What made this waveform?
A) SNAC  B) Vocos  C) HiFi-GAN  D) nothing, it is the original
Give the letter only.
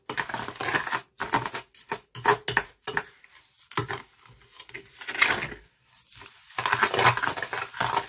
D